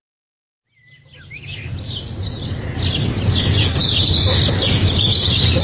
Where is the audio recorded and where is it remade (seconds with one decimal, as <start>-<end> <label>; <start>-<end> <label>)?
0.0-5.6 recorded